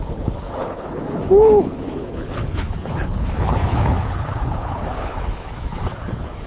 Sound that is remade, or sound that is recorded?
remade